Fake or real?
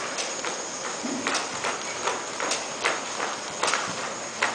real